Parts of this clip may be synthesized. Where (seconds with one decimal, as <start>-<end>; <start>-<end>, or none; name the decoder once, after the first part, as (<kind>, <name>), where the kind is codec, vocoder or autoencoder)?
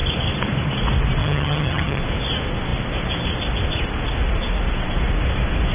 1.2-2.0 (vocoder, HiFi-GAN)